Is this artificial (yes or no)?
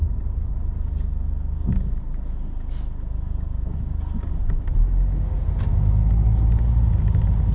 no